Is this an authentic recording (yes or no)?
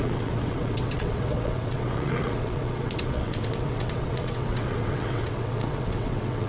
no